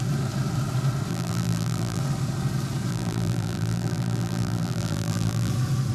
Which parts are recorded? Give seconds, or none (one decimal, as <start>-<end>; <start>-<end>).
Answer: 0.0-1.1; 2.0-2.9; 5.5-5.9